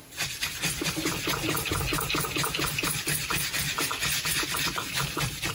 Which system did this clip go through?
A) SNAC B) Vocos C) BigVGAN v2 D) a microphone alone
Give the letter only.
D